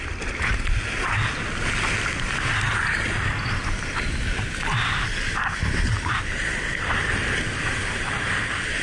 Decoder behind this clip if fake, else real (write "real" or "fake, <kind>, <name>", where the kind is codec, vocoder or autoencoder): real